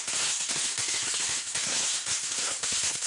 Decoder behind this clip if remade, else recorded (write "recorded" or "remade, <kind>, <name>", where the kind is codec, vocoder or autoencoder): remade, codec, SNAC